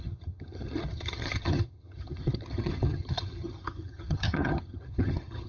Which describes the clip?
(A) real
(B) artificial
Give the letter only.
B